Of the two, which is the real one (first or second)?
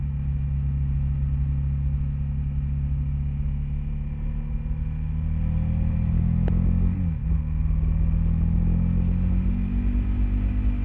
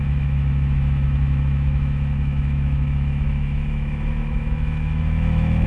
first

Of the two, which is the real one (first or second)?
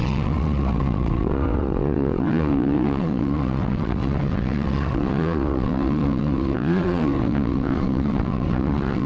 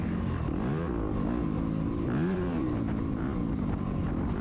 second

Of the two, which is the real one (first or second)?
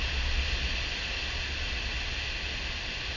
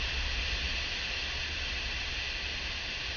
first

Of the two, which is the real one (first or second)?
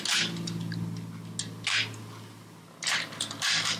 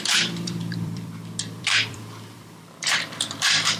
first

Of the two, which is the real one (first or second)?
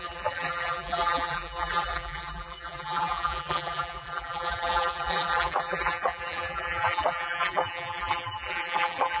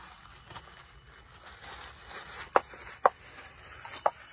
second